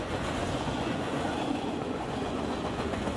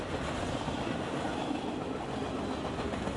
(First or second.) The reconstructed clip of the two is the first